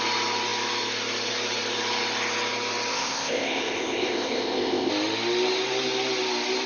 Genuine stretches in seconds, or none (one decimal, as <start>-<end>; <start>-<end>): 0.0-2.9; 4.9-6.7